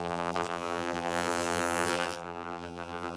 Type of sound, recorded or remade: remade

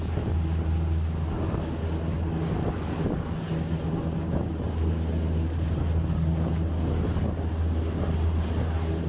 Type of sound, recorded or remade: recorded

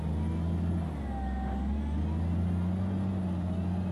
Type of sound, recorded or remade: recorded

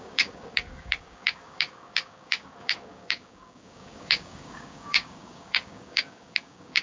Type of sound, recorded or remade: remade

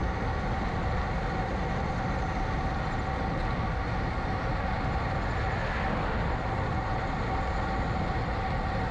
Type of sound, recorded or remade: recorded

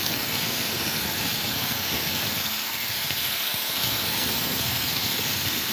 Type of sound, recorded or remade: remade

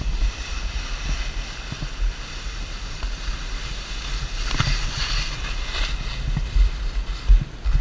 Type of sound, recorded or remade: recorded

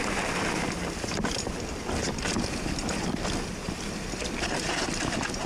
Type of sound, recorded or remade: recorded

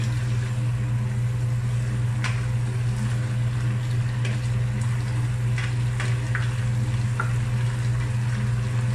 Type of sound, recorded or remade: recorded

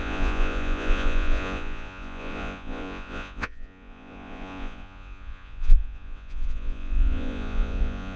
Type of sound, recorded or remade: remade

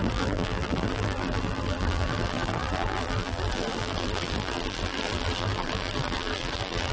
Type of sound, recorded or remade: remade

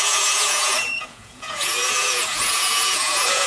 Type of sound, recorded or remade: remade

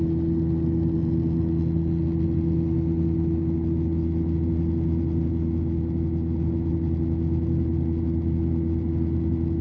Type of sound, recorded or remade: recorded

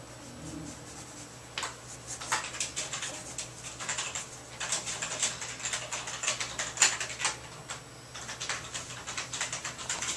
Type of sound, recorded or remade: recorded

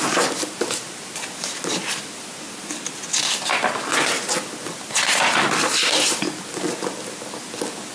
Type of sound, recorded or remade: recorded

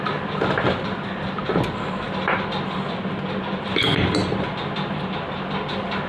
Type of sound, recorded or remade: recorded